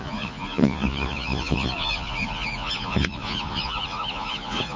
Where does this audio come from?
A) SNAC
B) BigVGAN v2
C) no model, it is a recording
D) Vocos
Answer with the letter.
D